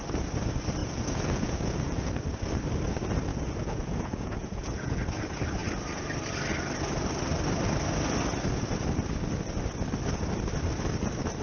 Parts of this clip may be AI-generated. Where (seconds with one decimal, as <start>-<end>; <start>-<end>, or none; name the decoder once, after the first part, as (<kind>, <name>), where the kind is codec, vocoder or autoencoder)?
0.8-2.1 (vocoder, Vocos); 3.3-5.0